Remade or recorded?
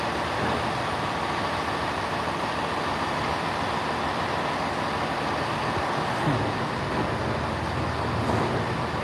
recorded